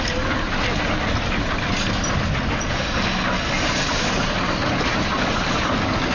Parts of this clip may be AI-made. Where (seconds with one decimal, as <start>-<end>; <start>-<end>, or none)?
none